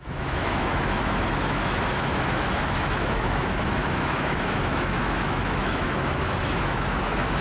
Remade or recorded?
remade